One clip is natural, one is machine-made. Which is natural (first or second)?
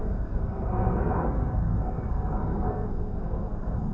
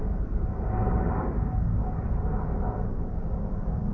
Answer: second